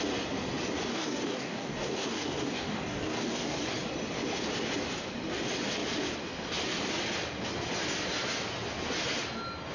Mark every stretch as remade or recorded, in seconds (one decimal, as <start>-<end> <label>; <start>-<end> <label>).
0.0-0.9 recorded; 0.9-3.6 remade; 3.6-9.7 recorded